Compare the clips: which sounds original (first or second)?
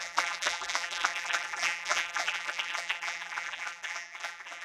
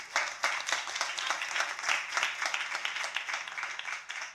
second